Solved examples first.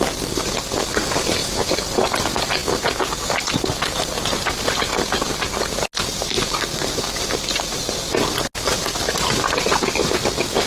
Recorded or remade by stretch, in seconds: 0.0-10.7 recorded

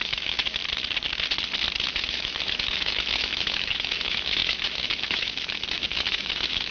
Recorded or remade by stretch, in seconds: 0.0-0.6 remade; 0.6-1.9 recorded; 1.9-6.7 remade

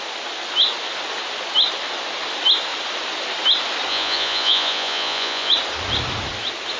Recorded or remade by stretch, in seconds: 0.0-3.9 recorded; 3.9-5.5 remade; 5.5-6.8 recorded

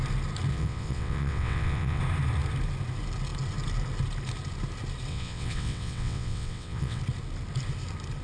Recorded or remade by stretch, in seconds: 0.0-0.5 recorded; 0.5-2.0 remade; 2.0-5.1 recorded; 5.1-7.0 remade; 7.0-8.2 recorded